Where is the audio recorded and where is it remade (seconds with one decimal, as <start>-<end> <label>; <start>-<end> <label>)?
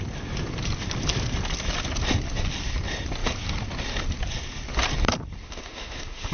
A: 0.0-5.4 recorded; 5.4-6.3 remade